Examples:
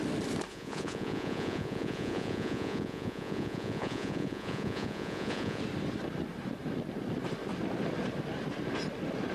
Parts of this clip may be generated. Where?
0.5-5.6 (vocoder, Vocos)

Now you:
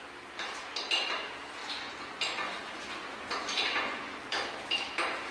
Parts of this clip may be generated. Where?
1.6-4.2 (vocoder, Vocos)

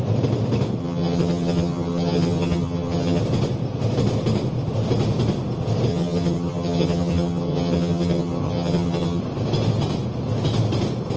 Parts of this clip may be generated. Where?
0.8-3.2 (vocoder, HiFi-GAN); 5.9-9.2

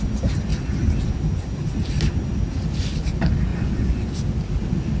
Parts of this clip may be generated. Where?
3.5-4.1 (vocoder, Vocos)

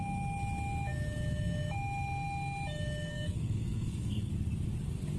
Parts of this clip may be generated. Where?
3.1-4.3 (codec, SNAC)

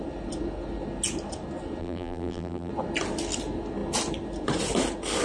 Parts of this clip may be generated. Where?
1.8-2.7 (vocoder, BigVGAN v2)

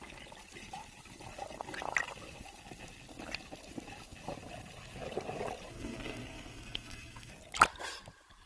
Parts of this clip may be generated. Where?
5.7-7.3 (codec, SNAC)